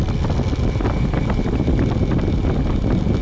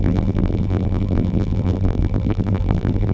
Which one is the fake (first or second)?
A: second